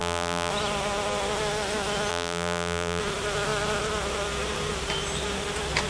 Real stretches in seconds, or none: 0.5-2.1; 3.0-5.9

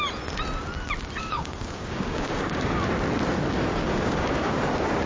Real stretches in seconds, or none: 0.0-1.2; 2.9-3.7; 4.6-5.1

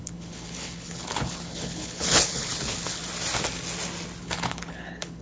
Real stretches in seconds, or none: 3.0-4.2

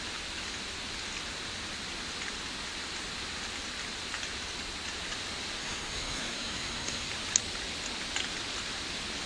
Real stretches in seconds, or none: 0.0-5.6; 7.1-9.3

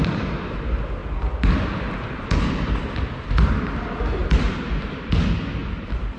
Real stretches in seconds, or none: 0.0-1.0; 2.9-4.2; 4.7-5.6